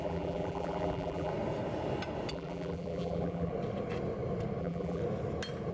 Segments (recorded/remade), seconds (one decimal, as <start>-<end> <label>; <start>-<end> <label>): 0.0-1.3 remade; 1.3-2.3 recorded; 2.3-3.5 remade; 3.5-4.6 recorded; 4.6-5.0 remade; 5.0-5.7 recorded